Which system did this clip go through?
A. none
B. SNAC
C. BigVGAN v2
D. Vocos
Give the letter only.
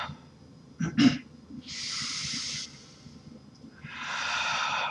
A